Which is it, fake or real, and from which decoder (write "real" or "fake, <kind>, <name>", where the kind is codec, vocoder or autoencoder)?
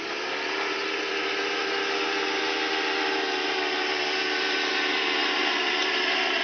fake, vocoder, BigVGAN v2